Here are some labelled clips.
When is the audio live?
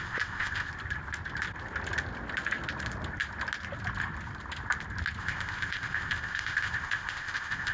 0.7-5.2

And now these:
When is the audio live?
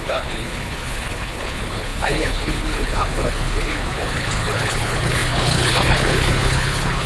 none